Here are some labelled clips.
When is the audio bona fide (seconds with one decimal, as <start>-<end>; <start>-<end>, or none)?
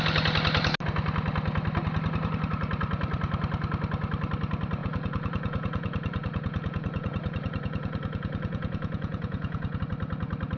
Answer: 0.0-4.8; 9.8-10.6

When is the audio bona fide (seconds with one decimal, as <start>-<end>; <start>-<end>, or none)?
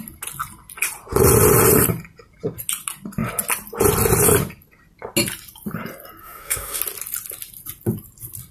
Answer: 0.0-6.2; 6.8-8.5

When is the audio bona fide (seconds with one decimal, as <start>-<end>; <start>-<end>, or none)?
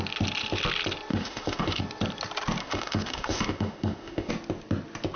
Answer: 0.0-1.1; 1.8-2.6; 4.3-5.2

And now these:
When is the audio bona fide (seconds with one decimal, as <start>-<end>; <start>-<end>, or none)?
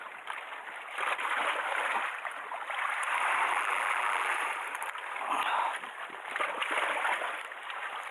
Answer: 0.0-3.5; 4.3-8.1